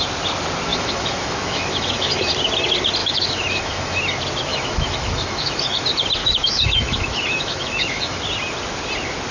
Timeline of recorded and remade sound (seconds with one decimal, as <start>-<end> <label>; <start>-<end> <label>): 0.0-0.7 recorded; 0.7-2.3 remade; 2.3-3.0 recorded; 3.0-4.0 remade; 4.0-4.5 recorded; 4.5-5.8 remade; 5.8-6.2 recorded; 6.2-8.2 remade; 8.2-9.3 recorded